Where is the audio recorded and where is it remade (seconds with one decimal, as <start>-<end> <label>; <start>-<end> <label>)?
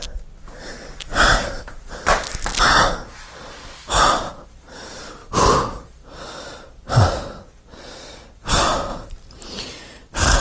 0.0-1.1 recorded; 1.1-1.8 remade; 1.8-8.9 recorded; 8.9-9.6 remade; 9.6-10.4 recorded